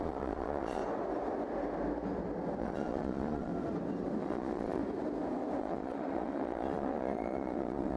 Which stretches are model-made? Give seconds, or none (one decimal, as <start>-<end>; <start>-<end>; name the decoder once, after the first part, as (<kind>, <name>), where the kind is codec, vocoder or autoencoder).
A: 0.0-0.8 (vocoder, Vocos); 2.6-3.5; 4.2-4.8; 5.6-8.0